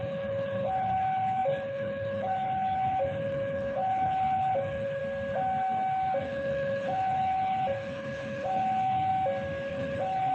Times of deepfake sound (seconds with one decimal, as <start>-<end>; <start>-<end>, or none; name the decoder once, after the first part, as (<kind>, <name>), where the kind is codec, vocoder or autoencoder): 0.0-5.0 (codec, HILCodec); 6.2-9.1; 9.7-10.3